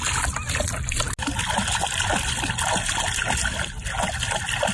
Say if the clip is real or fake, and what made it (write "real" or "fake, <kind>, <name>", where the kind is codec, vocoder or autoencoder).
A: real